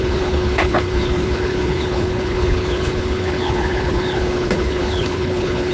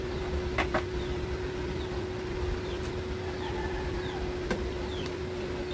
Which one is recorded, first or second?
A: second